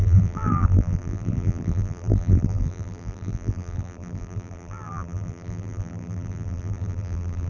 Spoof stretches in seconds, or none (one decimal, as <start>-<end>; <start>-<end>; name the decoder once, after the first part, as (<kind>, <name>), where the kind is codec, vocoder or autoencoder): 0.0-7.5 (vocoder, BigVGAN v2)